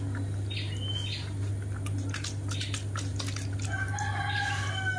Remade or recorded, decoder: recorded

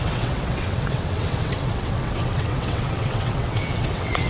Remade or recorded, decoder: remade, vocoder, WaveNeXt